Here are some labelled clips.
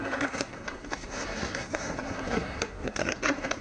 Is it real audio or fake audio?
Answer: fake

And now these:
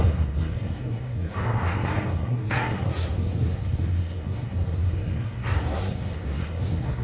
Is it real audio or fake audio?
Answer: fake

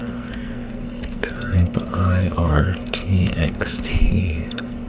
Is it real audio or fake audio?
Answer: fake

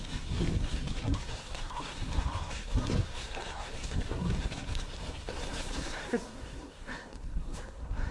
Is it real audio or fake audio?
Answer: fake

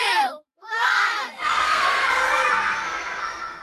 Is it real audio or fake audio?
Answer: fake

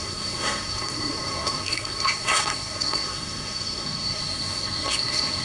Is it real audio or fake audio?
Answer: fake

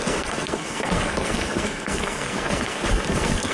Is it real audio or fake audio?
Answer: fake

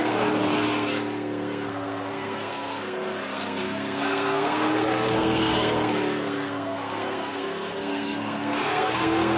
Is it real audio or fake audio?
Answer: fake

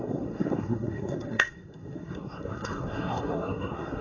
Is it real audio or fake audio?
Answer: fake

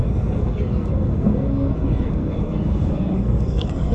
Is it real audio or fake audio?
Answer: fake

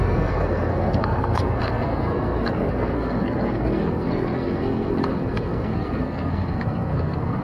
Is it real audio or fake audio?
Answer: fake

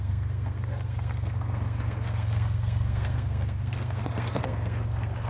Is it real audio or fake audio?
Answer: fake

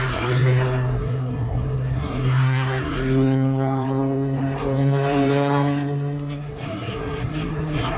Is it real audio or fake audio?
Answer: fake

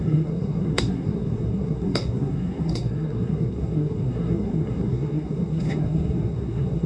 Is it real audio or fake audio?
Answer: fake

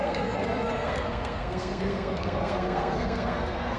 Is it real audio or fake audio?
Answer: fake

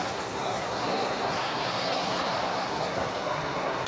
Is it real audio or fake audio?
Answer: fake